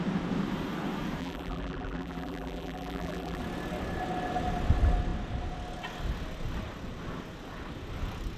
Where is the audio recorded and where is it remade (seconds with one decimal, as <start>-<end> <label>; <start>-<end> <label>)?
0.0-1.2 recorded; 1.2-3.4 remade; 3.4-8.4 recorded